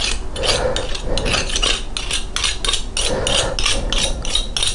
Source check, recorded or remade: recorded